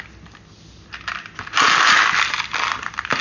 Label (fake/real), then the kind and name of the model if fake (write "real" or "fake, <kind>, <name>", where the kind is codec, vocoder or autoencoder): real